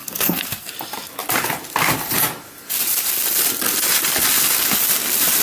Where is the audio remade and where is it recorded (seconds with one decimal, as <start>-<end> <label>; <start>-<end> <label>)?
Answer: 0.0-0.7 remade; 0.7-5.4 recorded